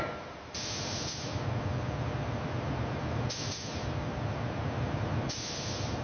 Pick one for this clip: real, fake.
fake